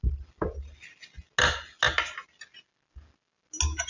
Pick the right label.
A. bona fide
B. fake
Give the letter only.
A